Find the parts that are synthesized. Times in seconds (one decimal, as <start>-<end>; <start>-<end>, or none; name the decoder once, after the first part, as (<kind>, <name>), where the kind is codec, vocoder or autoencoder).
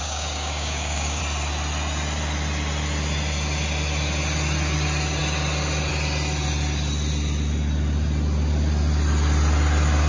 0.0-1.2 (codec, DAC)